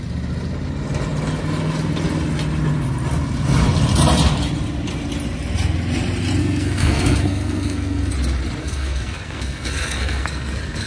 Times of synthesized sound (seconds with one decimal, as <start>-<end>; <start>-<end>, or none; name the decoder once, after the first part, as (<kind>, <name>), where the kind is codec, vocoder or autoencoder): 6.4-8.1 (codec, SNAC); 8.6-10.9